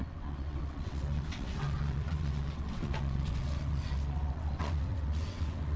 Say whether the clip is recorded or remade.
remade